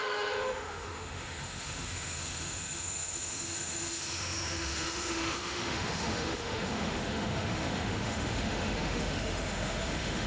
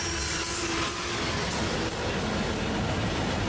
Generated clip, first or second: first